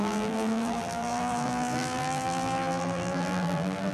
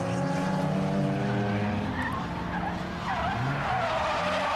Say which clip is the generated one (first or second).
first